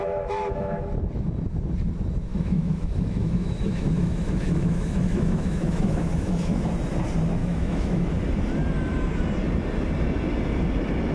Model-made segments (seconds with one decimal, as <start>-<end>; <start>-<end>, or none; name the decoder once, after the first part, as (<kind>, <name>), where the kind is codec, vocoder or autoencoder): 0.0-0.9 (autoencoder, DAC-VAE); 2.3-6.7; 7.4-8.1